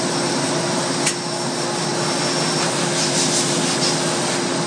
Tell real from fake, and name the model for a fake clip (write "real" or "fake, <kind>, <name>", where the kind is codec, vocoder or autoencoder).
real